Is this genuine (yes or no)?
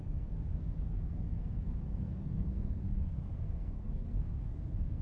no